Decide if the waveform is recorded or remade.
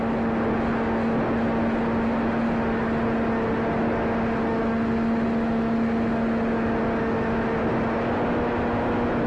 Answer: recorded